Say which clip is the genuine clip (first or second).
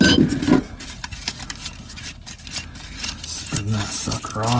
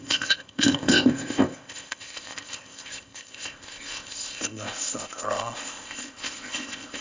first